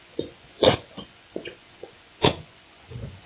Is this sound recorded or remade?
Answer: remade